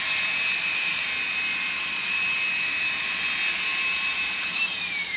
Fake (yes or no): yes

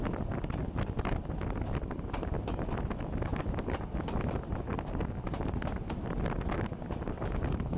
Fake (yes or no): no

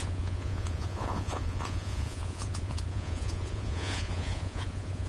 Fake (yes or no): yes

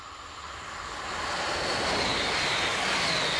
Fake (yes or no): no